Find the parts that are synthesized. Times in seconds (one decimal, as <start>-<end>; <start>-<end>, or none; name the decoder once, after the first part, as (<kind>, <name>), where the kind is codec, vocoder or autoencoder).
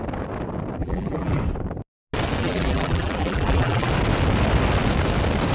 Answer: 0.8-1.4 (vocoder, BigVGAN v2); 2.4-3.9